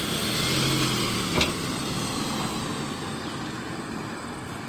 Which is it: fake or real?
real